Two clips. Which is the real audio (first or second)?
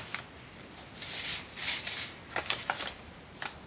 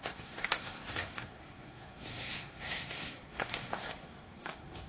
first